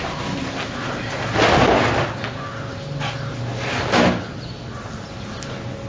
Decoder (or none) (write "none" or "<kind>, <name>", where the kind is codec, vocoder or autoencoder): none